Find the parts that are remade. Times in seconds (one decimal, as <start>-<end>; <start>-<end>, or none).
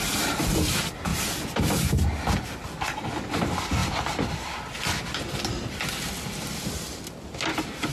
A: 3.8-4.5